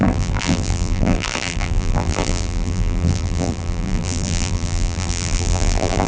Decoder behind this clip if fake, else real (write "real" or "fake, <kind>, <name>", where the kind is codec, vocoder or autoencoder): fake, vocoder, BigVGAN v2